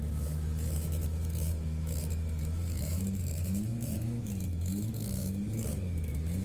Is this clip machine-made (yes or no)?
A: yes